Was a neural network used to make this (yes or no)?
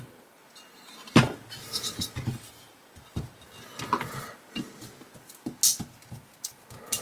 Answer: no